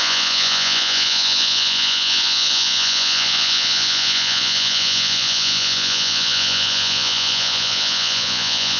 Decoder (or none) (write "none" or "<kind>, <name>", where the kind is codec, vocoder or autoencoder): vocoder, Vocos